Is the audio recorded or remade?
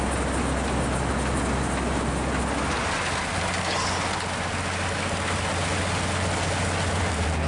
recorded